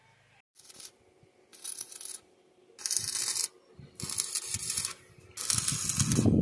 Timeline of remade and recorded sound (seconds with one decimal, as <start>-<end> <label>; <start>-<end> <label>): 0.0-6.4 recorded